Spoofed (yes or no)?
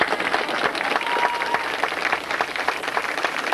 no